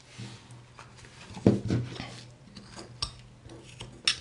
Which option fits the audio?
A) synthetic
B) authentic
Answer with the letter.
B